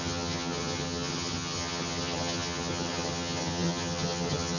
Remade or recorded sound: remade